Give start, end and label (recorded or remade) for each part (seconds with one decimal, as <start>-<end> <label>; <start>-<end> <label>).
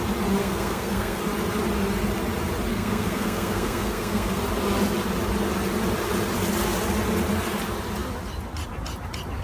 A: 0.0-0.4 recorded; 0.4-1.2 remade; 1.2-2.7 recorded; 2.7-4.4 remade; 4.4-9.4 recorded